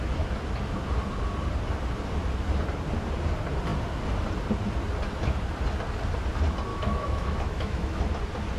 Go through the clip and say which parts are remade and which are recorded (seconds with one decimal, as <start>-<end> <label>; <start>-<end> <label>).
0.0-6.7 recorded; 6.7-8.0 remade; 8.0-8.6 recorded

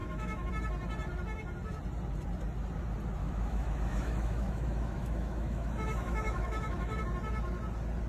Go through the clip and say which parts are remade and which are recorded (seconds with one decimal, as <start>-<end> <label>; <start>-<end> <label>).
0.0-0.5 remade; 0.5-3.2 recorded; 3.2-7.0 remade; 7.0-8.1 recorded

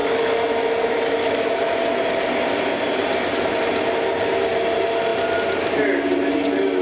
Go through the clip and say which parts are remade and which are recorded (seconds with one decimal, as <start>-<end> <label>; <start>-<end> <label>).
0.0-1.7 remade; 1.7-6.8 recorded

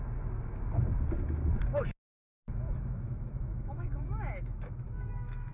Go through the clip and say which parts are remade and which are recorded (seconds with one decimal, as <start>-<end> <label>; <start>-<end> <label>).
0.0-2.2 recorded; 2.2-5.5 remade

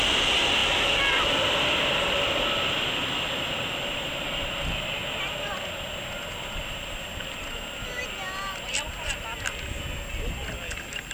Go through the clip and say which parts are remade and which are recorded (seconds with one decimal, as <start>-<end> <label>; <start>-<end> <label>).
0.0-11.1 recorded

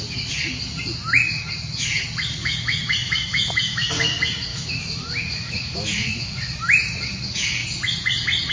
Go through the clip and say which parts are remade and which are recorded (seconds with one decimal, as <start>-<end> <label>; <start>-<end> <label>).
0.0-2.4 recorded; 2.4-4.1 remade; 4.1-4.5 recorded; 4.5-6.6 remade; 6.6-8.5 recorded

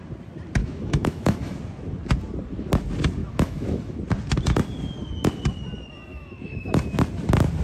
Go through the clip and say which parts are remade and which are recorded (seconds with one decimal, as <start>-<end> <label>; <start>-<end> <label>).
0.0-0.6 recorded; 0.6-1.6 remade; 1.6-3.2 recorded; 3.2-4.0 remade; 4.0-6.1 recorded; 6.1-6.7 remade; 6.7-7.6 recorded